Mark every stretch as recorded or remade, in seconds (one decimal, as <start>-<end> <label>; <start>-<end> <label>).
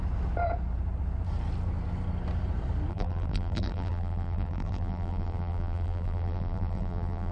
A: 0.0-2.9 recorded; 2.9-7.3 remade